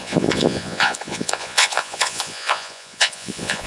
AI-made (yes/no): yes